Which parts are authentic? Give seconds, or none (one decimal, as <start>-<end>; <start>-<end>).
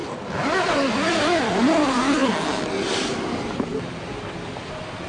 0.0-5.1